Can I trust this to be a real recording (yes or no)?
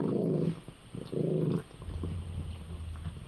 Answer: yes